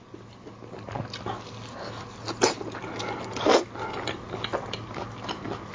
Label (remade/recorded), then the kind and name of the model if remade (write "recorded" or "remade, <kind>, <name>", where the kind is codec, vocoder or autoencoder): recorded